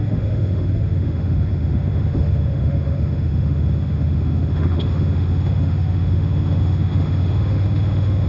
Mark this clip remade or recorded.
remade